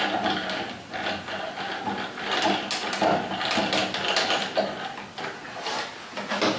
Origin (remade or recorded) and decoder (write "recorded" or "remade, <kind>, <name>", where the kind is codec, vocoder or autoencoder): recorded